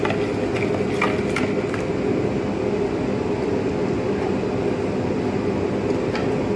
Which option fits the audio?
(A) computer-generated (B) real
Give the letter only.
B